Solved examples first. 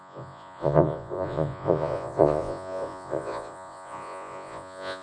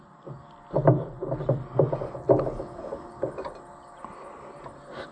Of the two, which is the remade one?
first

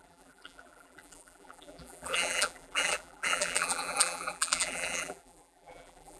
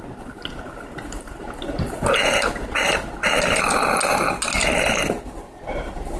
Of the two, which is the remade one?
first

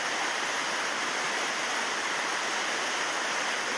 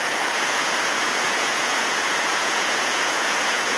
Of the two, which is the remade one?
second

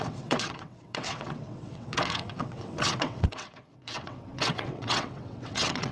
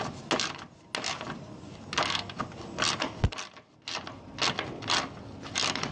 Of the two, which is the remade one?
first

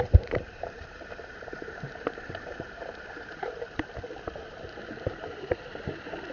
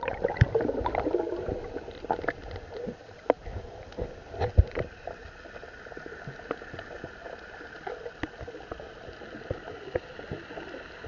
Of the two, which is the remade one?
first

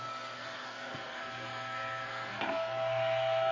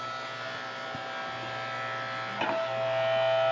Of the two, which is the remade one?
first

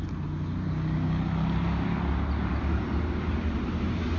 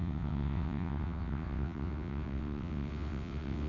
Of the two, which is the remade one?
second